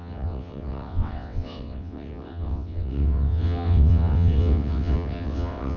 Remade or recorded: remade